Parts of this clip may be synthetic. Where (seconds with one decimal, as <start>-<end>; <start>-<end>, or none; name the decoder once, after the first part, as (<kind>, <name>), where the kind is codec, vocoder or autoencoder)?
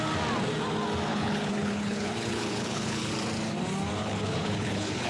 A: 1.1-3.1 (codec, HILCodec); 4.0-5.1